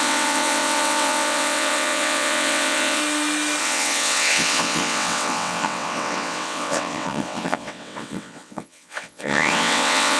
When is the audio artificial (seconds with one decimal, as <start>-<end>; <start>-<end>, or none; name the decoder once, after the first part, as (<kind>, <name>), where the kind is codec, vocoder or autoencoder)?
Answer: 0.0-3.0 (vocoder, WaveNeXt); 3.6-10.2